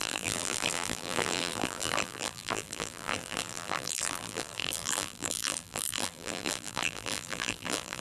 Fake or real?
fake